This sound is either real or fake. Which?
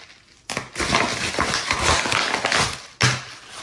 real